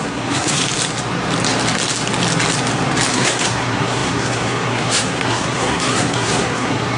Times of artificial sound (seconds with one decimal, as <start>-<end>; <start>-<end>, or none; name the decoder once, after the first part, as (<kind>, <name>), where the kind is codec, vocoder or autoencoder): 0.0-0.6 (codec, SNAC); 3.1-7.0